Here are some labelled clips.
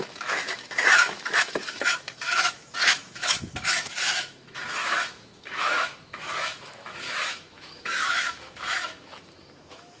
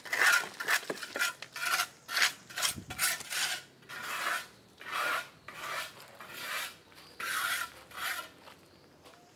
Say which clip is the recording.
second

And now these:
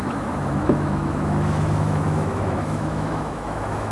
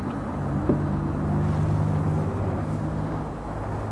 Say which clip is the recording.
second